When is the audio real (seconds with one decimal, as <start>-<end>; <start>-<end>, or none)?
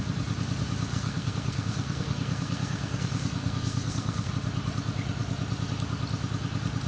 0.0-0.9; 4.3-6.9